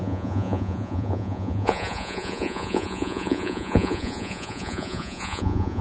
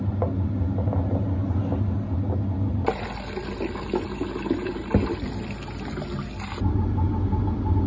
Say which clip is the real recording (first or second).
second